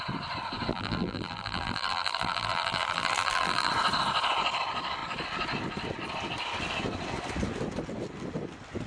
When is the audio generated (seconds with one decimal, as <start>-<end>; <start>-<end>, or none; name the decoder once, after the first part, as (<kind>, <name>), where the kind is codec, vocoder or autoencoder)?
0.7-3.7 (vocoder, BigVGAN v2)